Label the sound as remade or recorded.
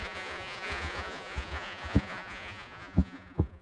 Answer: remade